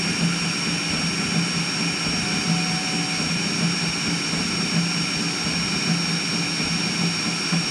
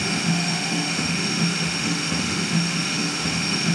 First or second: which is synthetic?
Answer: second